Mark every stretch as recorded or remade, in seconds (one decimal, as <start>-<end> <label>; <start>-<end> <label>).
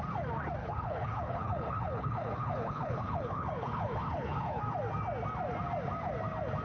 0.0-0.6 recorded; 0.6-4.6 remade; 4.6-6.6 recorded